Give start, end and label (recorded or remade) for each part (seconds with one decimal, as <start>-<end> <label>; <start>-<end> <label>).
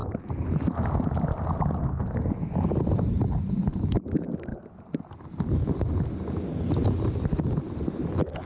0.0-8.5 recorded